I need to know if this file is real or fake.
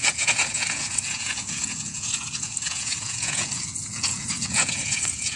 fake